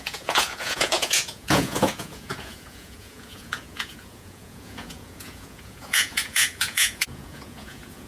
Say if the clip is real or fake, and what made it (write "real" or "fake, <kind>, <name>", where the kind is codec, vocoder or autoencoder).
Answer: fake, vocoder, Vocos